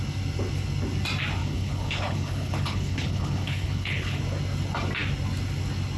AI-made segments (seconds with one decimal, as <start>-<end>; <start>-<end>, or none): 1.4-4.2